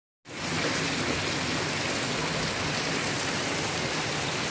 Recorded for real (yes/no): yes